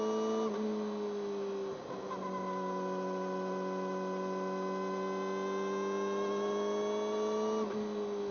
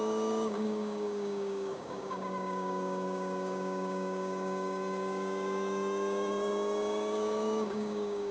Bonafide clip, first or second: first